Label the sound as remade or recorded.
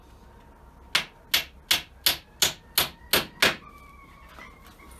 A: recorded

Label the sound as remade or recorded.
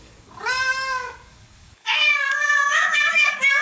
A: remade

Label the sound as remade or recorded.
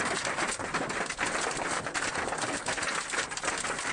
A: recorded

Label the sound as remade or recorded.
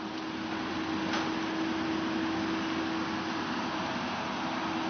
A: recorded